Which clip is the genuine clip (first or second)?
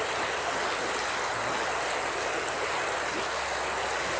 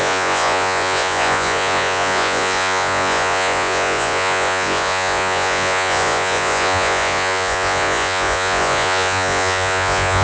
first